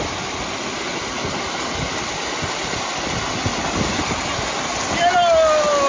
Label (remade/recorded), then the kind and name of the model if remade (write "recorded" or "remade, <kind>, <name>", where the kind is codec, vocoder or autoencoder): recorded